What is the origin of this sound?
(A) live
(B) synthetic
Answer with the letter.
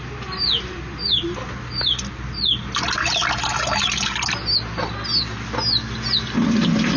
A